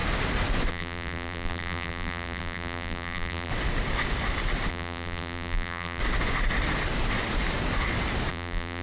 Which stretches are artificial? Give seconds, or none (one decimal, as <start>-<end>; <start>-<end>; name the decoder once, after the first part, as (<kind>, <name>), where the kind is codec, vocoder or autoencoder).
0.7-3.5 (vocoder, BigVGAN v2); 4.7-6.0; 8.3-8.8